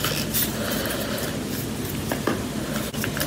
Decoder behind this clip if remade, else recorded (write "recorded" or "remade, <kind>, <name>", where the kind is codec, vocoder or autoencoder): recorded